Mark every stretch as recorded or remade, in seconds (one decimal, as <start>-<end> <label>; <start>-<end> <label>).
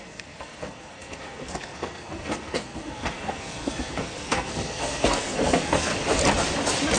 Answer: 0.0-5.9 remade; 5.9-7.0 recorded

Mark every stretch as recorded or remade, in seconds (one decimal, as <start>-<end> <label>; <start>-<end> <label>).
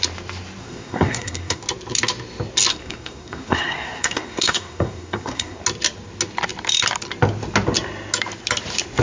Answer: 0.0-0.6 recorded; 0.6-1.6 remade; 1.6-2.7 recorded; 2.7-5.6 remade; 5.6-9.0 recorded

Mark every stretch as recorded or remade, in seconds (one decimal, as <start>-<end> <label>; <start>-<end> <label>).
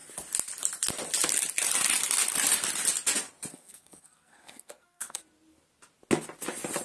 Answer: 0.0-3.5 recorded; 3.5-5.2 remade; 5.2-6.8 recorded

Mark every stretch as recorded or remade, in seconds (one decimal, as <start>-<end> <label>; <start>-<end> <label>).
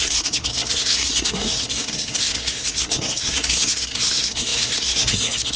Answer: 0.0-5.6 remade